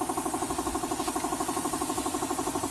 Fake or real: real